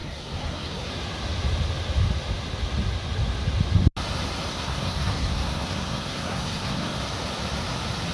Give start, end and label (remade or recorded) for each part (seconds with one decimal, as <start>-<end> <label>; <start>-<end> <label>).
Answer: 0.0-0.9 remade; 0.9-4.5 recorded; 4.5-7.0 remade; 7.0-8.1 recorded